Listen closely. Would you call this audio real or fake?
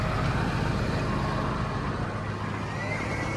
real